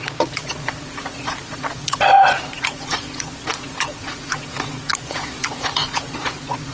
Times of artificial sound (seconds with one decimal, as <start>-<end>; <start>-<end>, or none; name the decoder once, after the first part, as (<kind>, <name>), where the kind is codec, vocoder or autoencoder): 0.0-6.7 (vocoder, Vocos)